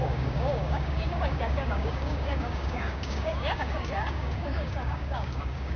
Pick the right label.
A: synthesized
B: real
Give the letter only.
A